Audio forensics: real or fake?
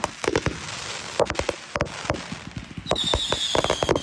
real